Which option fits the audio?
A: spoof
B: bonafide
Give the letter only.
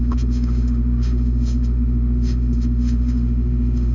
A